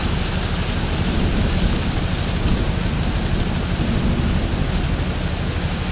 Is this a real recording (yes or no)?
yes